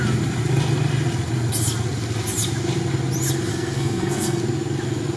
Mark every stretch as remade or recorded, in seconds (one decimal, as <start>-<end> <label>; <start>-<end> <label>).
0.0-3.5 recorded; 3.5-4.4 remade; 4.4-5.2 recorded